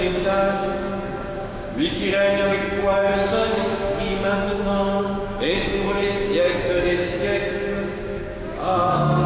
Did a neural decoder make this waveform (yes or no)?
yes